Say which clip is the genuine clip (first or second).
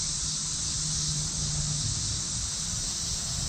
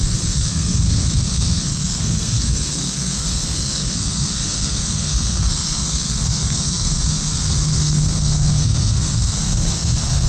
first